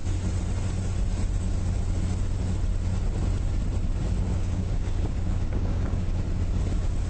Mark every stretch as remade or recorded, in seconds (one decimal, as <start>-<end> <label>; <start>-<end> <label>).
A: 0.0-4.3 recorded; 4.3-6.1 remade; 6.1-7.1 recorded